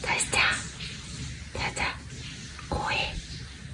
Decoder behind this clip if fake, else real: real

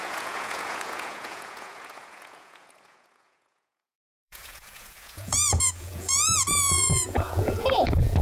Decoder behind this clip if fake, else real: fake, vocoder, Vocos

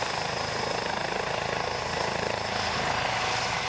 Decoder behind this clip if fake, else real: real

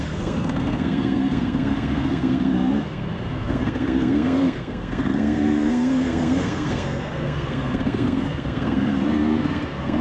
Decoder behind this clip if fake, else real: fake, codec, SNAC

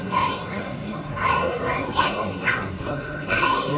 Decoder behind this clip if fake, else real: fake, codec, SNAC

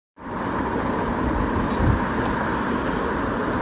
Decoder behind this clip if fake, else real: real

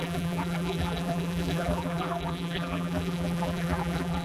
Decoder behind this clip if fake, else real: fake, vocoder, BigVGAN v2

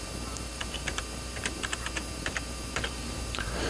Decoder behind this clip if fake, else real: fake, vocoder, BigVGAN v2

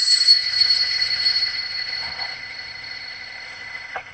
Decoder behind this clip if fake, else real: fake, codec, ZipCodec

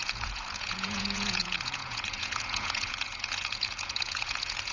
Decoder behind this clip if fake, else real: fake, vocoder, Vocos